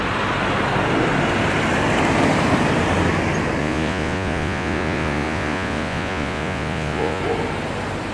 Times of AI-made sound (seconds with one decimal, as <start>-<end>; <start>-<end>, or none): 3.6-7.2